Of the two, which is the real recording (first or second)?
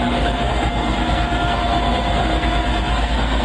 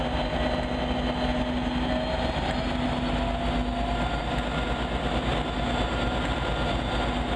second